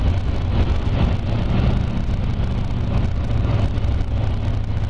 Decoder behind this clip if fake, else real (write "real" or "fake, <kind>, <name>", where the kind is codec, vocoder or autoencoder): real